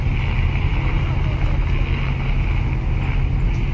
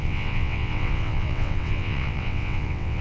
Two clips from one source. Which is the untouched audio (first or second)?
first